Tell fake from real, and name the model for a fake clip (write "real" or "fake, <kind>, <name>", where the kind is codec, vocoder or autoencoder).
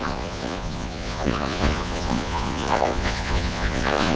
fake, vocoder, Vocos